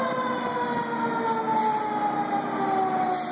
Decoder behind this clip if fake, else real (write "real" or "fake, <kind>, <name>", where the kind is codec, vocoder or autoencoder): real